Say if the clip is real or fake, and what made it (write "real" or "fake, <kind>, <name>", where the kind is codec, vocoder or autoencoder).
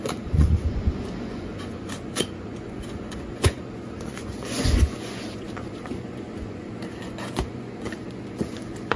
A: fake, vocoder, Vocos